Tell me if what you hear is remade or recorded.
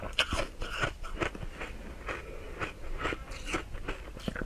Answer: recorded